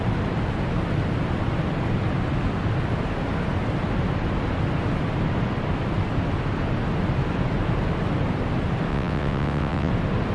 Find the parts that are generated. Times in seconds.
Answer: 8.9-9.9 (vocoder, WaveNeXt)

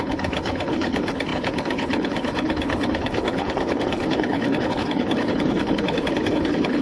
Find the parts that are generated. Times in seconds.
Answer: 0.0-6.8 (codec, HILCodec)

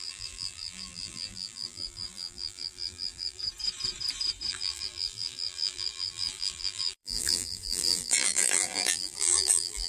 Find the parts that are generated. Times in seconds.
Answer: 0.0-3.4 (vocoder, BigVGAN v2); 4.5-9.9

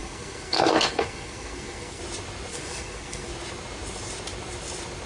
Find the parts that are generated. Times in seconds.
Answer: 0.0-2.0 (codec, SNAC); 2.5-3.3

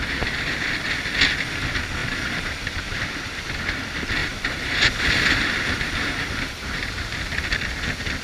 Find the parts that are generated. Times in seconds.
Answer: 2.0-3.5 (vocoder, BigVGAN v2); 4.2-6.9